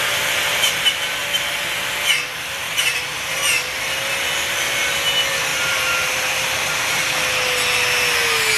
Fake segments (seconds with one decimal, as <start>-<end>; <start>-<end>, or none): 2.6-3.4; 5.5-7.1